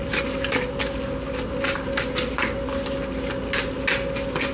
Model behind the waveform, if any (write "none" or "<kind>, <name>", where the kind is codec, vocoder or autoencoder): none